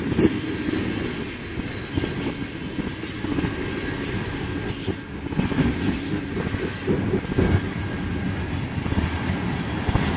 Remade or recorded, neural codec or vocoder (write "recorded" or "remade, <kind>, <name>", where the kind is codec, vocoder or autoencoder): recorded